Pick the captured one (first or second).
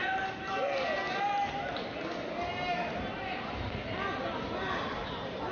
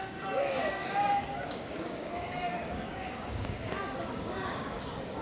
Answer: first